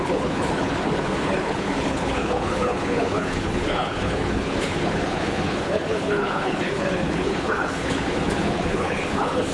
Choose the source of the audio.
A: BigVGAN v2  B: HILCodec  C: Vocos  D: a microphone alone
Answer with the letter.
B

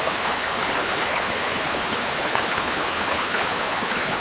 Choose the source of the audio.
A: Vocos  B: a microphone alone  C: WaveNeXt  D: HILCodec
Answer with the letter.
D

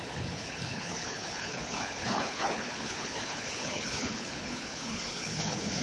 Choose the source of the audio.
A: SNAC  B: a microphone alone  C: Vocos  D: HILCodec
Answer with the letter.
D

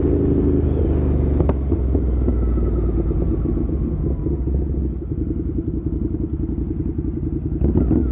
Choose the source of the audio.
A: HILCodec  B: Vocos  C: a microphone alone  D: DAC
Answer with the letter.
C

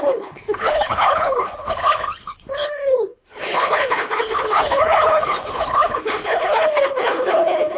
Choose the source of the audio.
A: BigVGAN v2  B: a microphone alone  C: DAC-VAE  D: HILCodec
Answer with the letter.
D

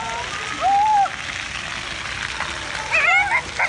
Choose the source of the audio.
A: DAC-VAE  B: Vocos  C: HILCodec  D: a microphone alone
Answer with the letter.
D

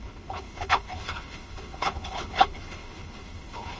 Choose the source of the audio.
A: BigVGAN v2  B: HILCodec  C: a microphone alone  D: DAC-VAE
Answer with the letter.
B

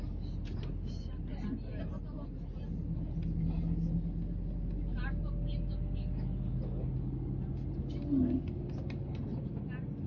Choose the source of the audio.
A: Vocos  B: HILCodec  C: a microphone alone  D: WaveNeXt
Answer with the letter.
C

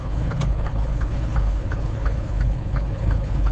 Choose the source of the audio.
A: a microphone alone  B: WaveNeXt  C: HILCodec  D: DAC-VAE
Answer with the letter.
C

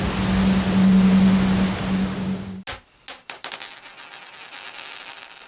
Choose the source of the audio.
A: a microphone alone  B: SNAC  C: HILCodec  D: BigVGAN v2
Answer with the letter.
A